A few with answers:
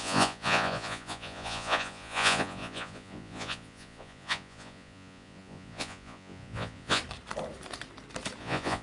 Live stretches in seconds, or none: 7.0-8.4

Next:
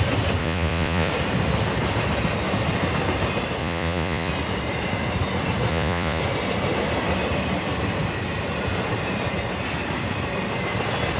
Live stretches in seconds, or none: 0.0-0.4; 1.1-3.6; 4.3-5.7; 6.2-11.2

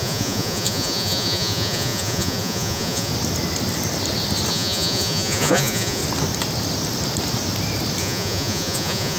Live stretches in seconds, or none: 3.1-4.5; 6.0-8.0

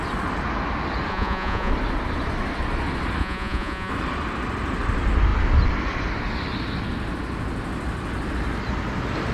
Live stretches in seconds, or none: 0.0-1.1; 1.7-3.2; 3.9-9.3